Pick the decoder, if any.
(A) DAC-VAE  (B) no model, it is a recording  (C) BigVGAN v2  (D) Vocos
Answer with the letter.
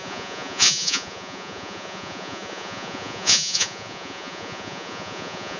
D